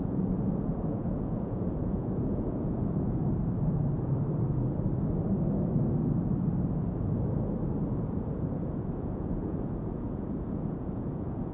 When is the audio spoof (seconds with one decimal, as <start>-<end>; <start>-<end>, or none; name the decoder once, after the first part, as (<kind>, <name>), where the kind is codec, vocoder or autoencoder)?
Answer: 0.0-3.2 (vocoder, Vocos); 7.8-11.5